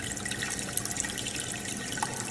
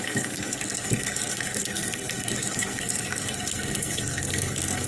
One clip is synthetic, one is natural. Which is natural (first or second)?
first